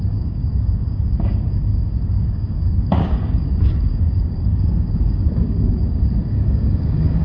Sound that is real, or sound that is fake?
fake